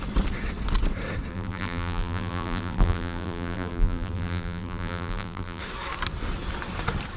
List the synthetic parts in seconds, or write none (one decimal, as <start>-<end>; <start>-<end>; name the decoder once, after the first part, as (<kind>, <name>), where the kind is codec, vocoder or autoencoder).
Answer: 1.3-5.6 (vocoder, BigVGAN v2)